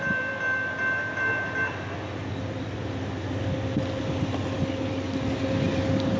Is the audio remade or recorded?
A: recorded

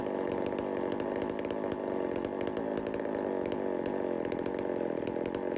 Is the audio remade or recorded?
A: recorded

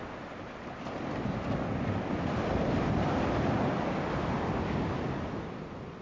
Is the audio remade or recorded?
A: recorded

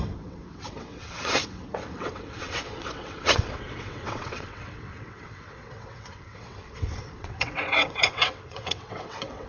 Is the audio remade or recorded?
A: remade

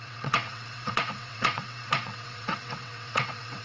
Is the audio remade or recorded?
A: remade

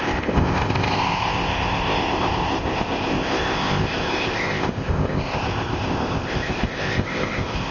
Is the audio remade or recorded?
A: remade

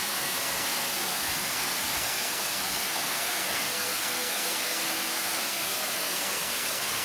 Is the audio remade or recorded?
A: remade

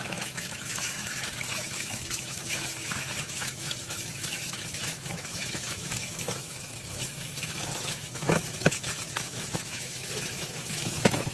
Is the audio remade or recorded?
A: remade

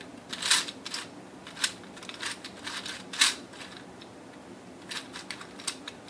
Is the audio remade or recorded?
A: remade